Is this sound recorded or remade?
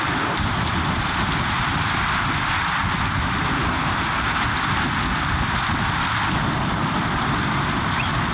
remade